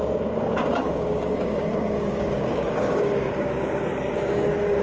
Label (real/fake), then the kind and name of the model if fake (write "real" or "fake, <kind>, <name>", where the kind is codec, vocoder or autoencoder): fake, codec, DAC